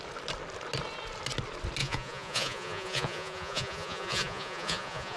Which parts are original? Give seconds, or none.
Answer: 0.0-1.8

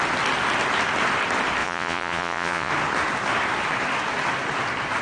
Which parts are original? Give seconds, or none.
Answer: 0.0-1.6; 2.7-5.0

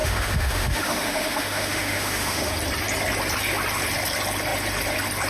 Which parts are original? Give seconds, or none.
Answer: 2.5-5.3

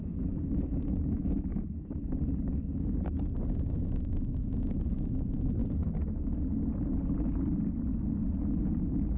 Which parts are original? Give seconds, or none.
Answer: 2.0-3.9; 5.6-9.2

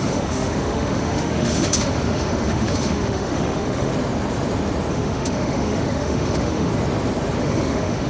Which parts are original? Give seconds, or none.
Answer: 3.9-4.9; 6.7-7.4

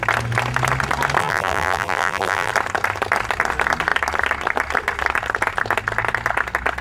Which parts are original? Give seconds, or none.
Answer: 0.0-1.2; 2.5-6.8